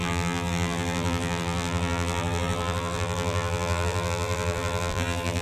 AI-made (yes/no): yes